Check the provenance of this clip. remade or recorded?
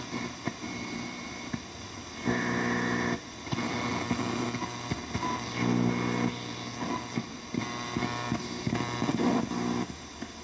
recorded